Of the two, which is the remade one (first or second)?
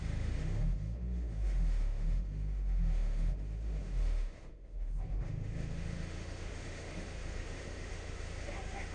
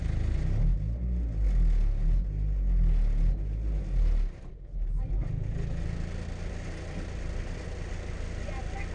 first